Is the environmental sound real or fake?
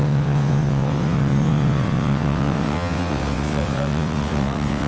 fake